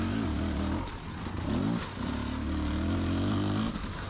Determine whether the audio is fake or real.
real